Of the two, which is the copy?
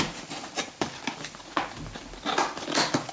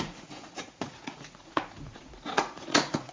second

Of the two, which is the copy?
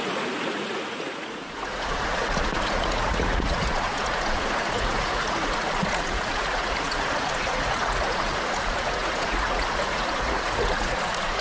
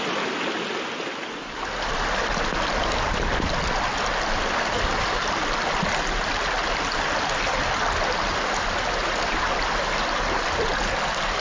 first